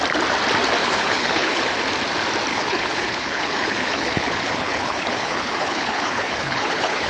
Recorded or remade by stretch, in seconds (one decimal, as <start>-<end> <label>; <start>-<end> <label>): 0.0-0.8 recorded; 0.8-1.6 remade; 1.6-2.5 recorded; 2.5-7.1 remade